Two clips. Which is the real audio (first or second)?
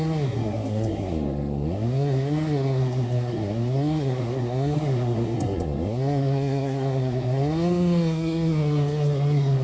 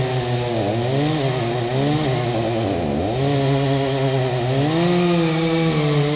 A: second